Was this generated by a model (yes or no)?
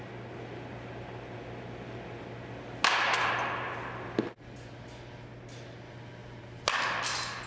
no